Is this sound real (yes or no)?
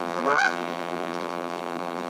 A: no